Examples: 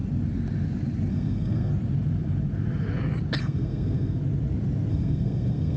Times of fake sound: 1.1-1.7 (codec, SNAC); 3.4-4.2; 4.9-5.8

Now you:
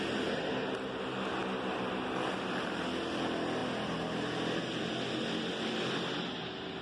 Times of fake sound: none

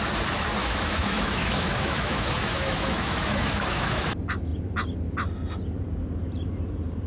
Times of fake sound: 0.6-4.1 (autoencoder, DAC-VAE)